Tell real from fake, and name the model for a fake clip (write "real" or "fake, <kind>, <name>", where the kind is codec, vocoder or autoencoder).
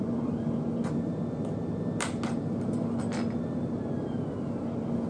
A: real